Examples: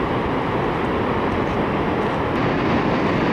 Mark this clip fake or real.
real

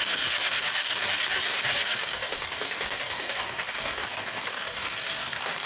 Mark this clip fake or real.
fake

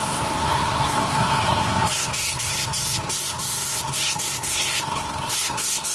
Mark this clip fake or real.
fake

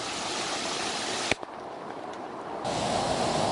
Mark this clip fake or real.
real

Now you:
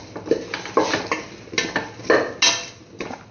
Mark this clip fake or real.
real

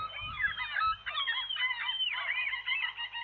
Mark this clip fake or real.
real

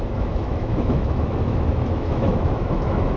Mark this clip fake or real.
fake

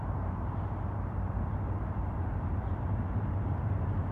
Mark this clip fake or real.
fake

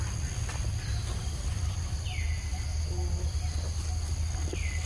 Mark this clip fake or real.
real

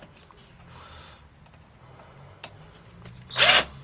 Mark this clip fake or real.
real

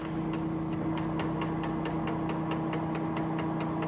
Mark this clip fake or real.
real